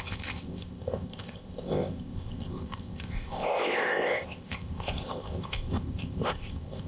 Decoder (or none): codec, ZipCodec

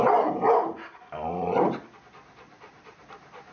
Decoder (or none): none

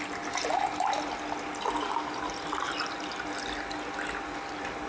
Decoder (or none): none